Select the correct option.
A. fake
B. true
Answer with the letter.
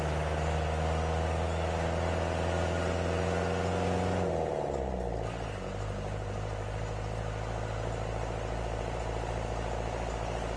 B